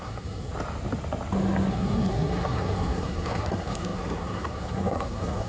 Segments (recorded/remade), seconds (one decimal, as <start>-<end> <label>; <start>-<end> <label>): 0.0-0.5 remade; 0.5-1.7 recorded; 1.7-5.5 remade